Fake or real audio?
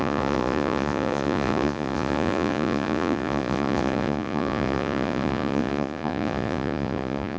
fake